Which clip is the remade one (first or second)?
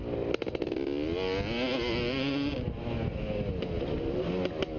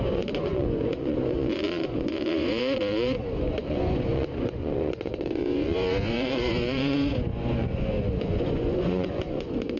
second